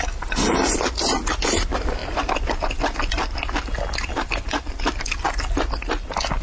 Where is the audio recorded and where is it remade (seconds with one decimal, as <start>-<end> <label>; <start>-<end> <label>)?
0.0-6.4 recorded